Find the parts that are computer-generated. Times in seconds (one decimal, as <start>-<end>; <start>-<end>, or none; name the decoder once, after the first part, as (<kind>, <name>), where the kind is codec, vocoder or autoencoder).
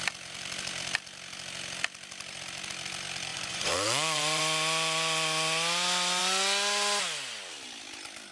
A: 3.3-4.4 (vocoder, Vocos)